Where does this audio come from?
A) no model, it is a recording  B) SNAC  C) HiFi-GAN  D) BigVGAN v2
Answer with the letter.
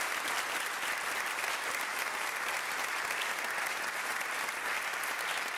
A